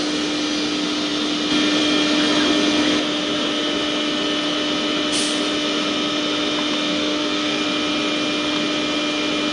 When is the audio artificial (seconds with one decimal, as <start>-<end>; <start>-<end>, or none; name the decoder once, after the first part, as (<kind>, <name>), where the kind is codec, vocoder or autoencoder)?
6.9-7.6 (codec, SNAC)